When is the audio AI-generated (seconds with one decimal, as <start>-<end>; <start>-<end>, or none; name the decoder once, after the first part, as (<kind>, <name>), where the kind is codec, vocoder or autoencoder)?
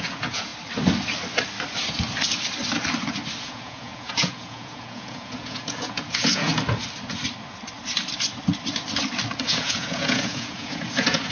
0.0-0.5 (vocoder, Vocos); 3.4-6.5; 9.5-11.3